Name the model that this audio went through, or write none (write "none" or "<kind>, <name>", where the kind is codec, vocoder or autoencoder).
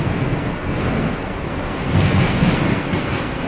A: codec, SNAC